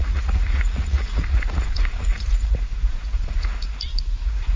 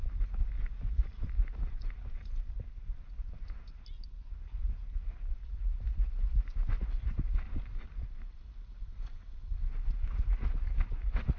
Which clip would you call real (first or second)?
second